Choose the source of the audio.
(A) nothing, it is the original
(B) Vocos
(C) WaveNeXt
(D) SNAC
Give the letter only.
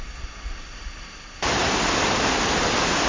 A